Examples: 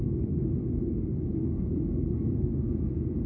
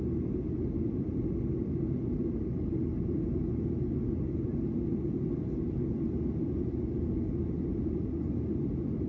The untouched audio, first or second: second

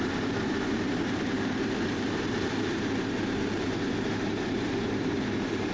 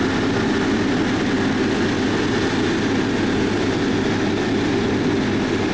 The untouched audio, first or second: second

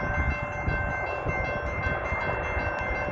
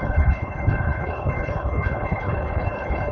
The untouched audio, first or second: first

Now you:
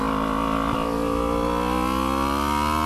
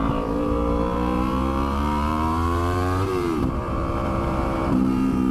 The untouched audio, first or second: first